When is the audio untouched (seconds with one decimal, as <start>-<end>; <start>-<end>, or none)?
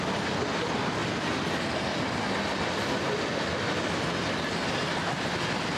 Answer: 0.0-5.8